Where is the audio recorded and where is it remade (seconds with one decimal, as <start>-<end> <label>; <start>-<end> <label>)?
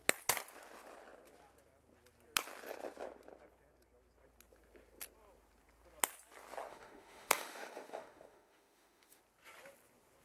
0.0-6.7 recorded; 6.7-9.2 remade; 9.2-10.2 recorded